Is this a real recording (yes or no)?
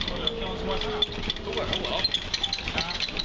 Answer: yes